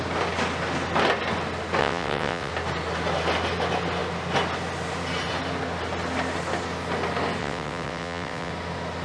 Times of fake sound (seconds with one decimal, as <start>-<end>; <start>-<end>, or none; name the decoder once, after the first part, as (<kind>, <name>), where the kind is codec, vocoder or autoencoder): 1.8-2.5 (vocoder, WaveNeXt); 7.4-8.5